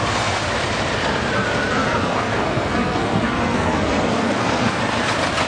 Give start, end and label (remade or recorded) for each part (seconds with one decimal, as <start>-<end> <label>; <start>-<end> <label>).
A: 0.0-1.8 recorded; 1.8-4.8 remade; 4.8-5.5 recorded